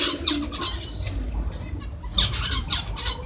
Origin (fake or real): real